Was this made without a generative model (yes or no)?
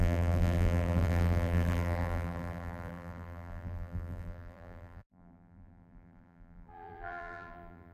no